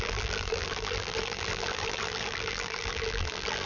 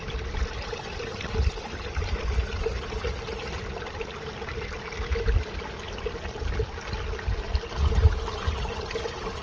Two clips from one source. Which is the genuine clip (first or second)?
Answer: second